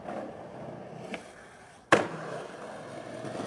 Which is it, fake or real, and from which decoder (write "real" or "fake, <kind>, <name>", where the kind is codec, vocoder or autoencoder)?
real